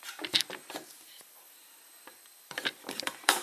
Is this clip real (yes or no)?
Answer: no